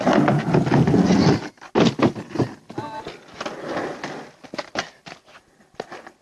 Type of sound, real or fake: real